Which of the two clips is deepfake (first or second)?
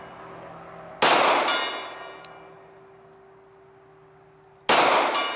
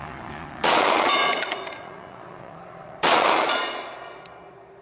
second